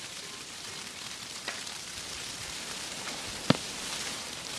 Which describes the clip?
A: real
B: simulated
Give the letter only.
B